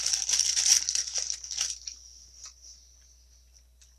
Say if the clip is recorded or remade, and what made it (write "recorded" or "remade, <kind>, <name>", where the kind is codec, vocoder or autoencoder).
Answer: recorded